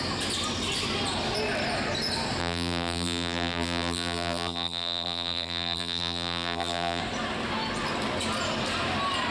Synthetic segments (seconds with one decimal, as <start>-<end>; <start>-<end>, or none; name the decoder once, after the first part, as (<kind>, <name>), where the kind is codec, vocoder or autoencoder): 2.4-7.0 (vocoder, BigVGAN v2)